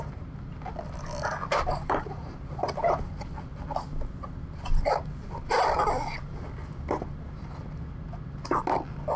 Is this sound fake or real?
real